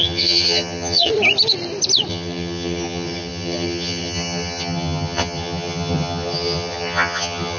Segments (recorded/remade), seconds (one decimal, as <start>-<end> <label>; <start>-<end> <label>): 0.0-1.1 remade; 1.1-2.1 recorded; 2.1-7.6 remade